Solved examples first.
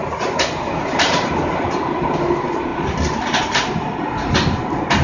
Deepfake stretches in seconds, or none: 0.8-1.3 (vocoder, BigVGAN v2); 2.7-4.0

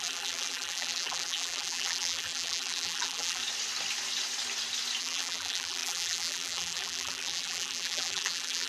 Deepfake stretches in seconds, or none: 0.0-3.4 (vocoder, BigVGAN v2); 5.0-8.7

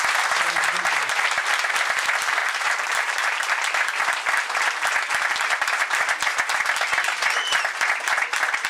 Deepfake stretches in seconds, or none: 2.4-3.5 (vocoder, BigVGAN v2)

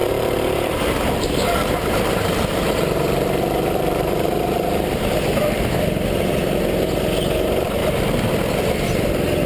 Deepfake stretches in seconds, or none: 0.0-4.9 (vocoder, BigVGAN v2); 7.8-8.3